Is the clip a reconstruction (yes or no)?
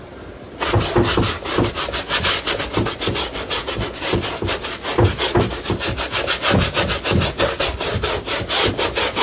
no